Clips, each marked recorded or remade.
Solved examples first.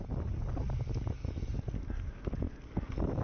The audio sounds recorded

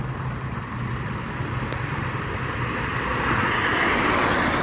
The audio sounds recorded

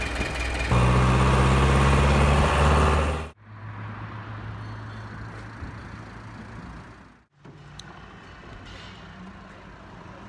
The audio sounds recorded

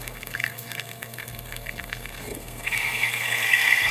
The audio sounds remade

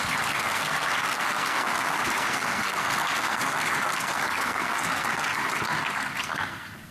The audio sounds remade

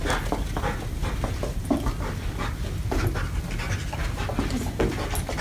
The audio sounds recorded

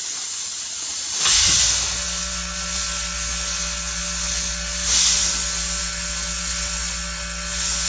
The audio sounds recorded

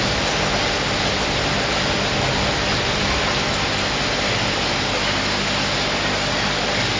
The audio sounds recorded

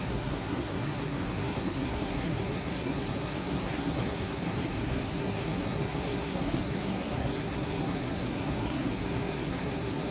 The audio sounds remade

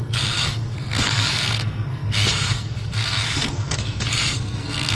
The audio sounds remade